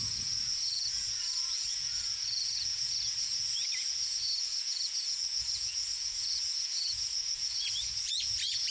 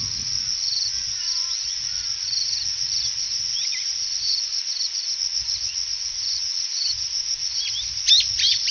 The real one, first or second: second